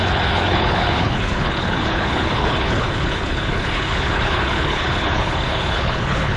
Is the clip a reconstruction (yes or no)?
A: yes